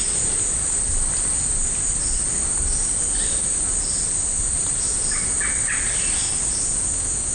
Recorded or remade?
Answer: recorded